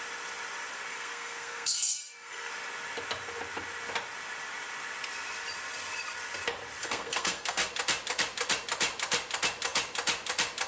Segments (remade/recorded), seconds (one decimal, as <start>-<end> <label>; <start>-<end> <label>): 0.0-0.9 recorded; 0.9-2.5 remade; 2.5-6.8 recorded; 6.8-7.7 remade; 7.7-10.7 recorded